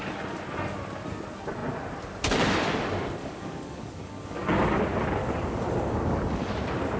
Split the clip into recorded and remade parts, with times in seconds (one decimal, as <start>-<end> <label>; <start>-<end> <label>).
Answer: 0.0-3.2 recorded; 3.2-4.8 remade; 4.8-5.2 recorded; 5.2-6.5 remade; 6.5-7.0 recorded